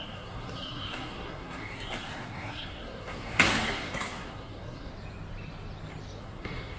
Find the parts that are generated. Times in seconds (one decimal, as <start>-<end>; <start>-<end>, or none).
0.0-4.9; 6.2-6.8

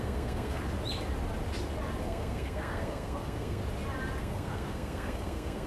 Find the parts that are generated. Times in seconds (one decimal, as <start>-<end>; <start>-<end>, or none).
0.0-0.6; 2.0-3.6; 4.2-5.7

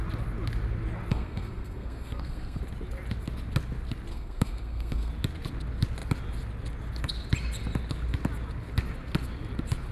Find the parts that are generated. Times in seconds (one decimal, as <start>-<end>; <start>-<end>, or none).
1.1-2.6; 4.1-5.1

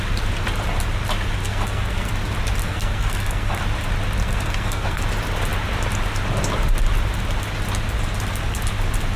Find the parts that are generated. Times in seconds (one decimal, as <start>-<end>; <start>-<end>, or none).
1.4-2.1; 2.6-3.6; 4.2-5.0

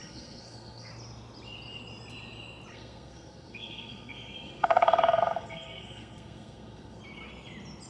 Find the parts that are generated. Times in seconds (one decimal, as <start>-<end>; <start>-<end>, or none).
0.0-0.9; 2.7-7.0

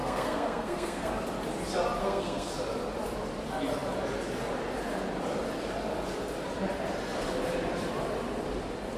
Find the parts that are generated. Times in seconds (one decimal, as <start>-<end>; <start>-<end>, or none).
0.0-1.1; 2.0-2.5